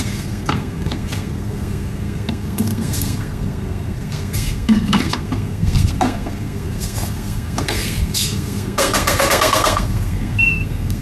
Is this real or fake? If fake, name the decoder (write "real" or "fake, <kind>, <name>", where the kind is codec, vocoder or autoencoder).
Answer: fake, codec, SNAC